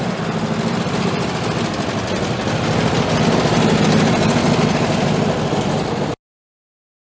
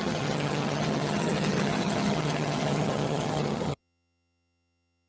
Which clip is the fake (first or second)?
second